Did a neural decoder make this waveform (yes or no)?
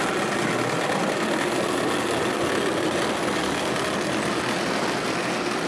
no